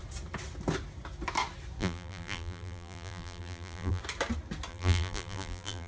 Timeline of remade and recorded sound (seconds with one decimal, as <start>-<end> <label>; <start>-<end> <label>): 0.0-1.8 recorded; 1.8-4.0 remade; 4.0-4.7 recorded; 4.7-5.9 remade